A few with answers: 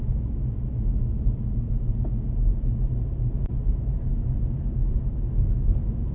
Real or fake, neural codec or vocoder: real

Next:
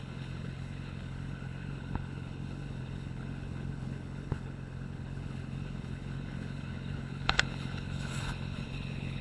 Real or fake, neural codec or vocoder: fake, codec, HILCodec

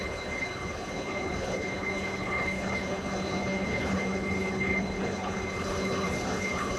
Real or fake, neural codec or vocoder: fake, codec, HILCodec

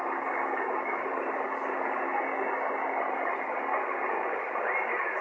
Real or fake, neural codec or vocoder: real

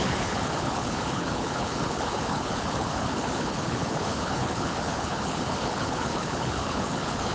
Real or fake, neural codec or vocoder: fake, codec, HILCodec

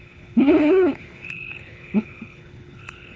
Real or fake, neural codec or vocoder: fake, codec, HILCodec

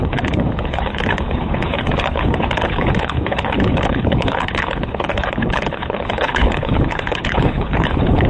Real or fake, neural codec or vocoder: fake, codec, HILCodec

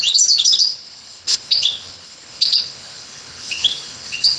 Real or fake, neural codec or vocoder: fake, codec, HILCodec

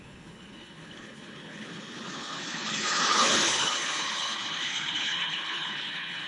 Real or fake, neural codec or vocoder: fake, codec, HILCodec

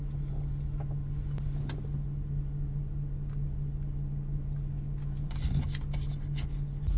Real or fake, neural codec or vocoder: real